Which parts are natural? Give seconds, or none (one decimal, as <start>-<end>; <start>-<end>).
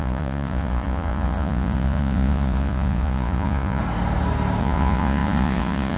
3.8-4.6